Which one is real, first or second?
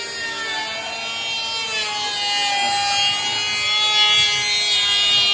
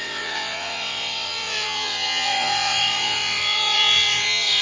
first